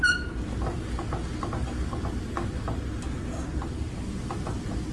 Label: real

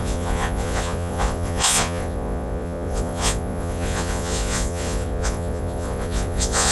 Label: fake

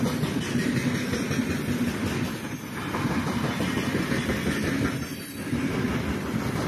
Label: real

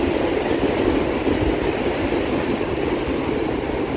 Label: real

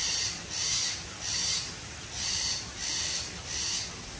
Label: real